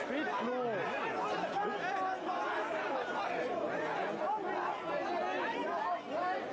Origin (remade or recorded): recorded